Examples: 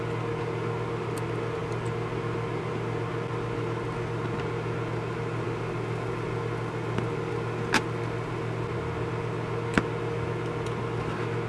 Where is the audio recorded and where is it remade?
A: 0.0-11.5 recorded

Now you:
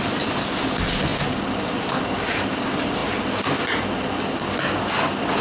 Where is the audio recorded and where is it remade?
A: 0.0-5.4 recorded

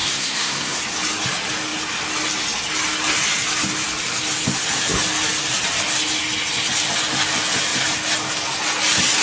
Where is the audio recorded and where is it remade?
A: 0.0-0.8 remade; 0.8-9.2 recorded

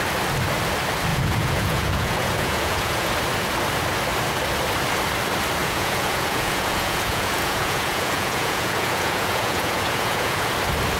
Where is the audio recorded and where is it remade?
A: 0.0-1.1 recorded; 1.1-3.1 remade; 3.1-5.6 recorded; 5.6-10.5 remade; 10.5-11.0 recorded

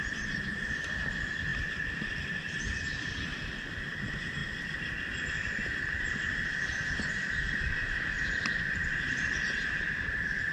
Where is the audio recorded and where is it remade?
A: 0.0-4.4 remade; 4.4-6.0 recorded; 6.0-8.8 remade; 8.8-9.8 recorded; 9.8-10.5 remade

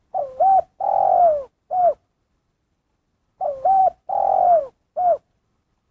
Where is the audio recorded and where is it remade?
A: 0.0-5.9 recorded

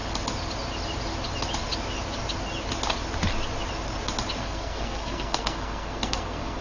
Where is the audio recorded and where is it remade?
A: 0.0-4.4 recorded; 4.4-6.6 remade

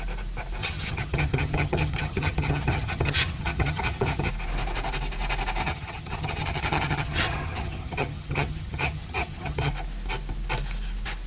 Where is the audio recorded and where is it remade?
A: 0.0-0.6 recorded; 0.6-4.3 remade; 4.3-5.6 recorded; 5.6-9.7 remade; 9.7-11.3 recorded